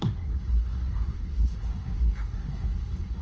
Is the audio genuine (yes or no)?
no